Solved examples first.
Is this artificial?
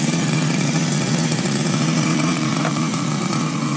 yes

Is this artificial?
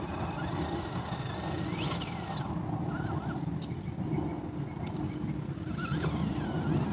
no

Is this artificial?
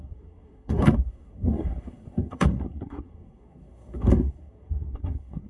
yes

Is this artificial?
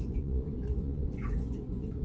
yes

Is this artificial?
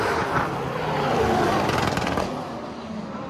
no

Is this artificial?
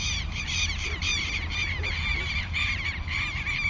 yes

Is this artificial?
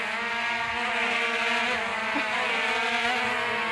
no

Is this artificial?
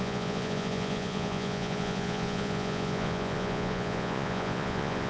yes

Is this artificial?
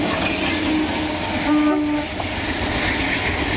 no